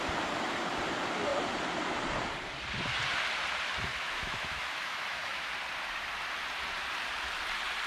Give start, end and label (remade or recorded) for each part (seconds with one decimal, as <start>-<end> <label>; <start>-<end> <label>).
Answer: 0.0-3.9 recorded; 3.9-5.5 remade; 5.5-7.9 recorded

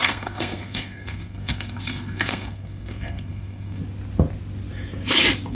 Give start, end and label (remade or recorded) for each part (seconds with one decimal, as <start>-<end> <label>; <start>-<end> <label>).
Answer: 0.0-3.8 remade; 3.8-5.5 recorded